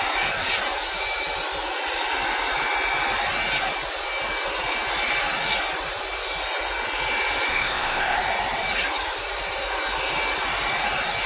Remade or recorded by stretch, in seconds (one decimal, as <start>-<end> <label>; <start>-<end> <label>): 0.0-7.5 recorded; 7.5-8.2 remade; 8.2-11.3 recorded